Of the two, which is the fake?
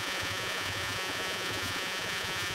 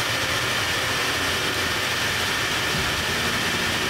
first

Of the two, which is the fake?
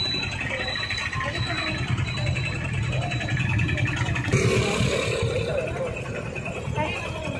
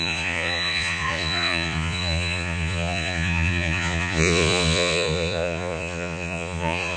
second